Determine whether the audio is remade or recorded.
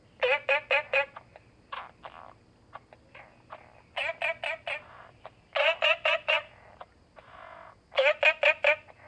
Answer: recorded